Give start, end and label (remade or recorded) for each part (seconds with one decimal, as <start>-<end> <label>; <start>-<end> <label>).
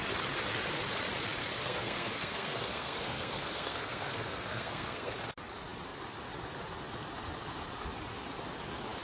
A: 0.0-1.4 recorded; 1.4-5.1 remade; 5.1-9.0 recorded